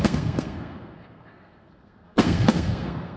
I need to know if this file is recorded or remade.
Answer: remade